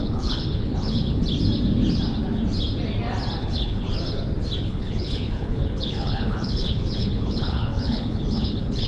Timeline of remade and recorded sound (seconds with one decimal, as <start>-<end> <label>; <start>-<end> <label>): 0.0-1.2 remade; 1.2-3.4 recorded; 3.4-3.9 remade; 3.9-4.6 recorded; 4.6-8.9 remade